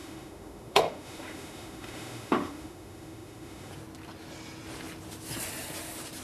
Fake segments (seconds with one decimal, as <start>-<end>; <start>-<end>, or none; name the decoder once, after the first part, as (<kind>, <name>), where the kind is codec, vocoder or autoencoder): 0.0-3.7 (autoencoder, DAC-VAE)